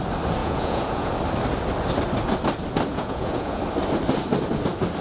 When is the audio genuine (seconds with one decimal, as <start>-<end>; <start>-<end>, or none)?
0.0-0.4; 1.1-2.9; 3.6-5.0